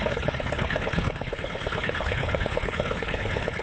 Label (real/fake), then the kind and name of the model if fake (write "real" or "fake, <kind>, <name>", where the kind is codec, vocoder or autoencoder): fake, codec, HILCodec